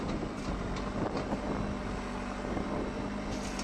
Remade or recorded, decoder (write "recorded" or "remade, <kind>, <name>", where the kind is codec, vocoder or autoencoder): recorded